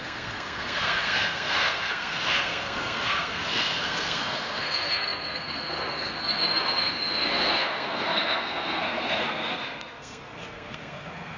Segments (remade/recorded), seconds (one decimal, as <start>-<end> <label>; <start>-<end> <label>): 0.0-11.4 remade